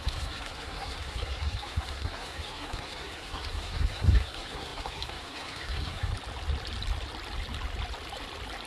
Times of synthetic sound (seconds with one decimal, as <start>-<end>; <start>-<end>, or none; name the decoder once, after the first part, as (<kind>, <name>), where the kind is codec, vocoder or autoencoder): 0.0-6.1 (codec, SNAC)